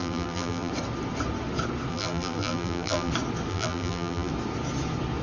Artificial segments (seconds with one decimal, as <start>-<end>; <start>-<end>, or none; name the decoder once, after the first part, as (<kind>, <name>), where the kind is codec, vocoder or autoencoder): 0.0-0.7 (vocoder, BigVGAN v2); 1.9-3.1; 3.5-4.3